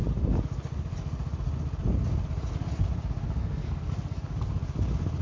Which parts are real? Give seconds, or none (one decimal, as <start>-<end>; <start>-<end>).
0.0-3.4; 3.9-5.2